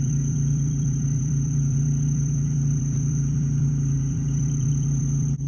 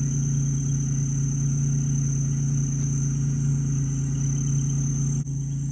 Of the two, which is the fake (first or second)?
first